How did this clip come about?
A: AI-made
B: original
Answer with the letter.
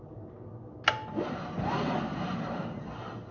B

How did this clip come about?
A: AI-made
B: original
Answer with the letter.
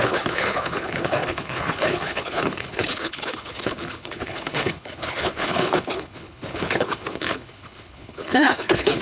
A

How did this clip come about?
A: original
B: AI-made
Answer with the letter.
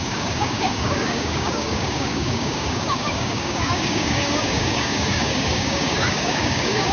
B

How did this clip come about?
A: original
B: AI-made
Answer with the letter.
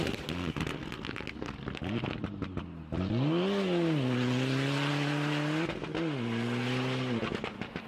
A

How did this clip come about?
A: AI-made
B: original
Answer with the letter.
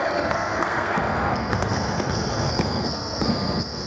A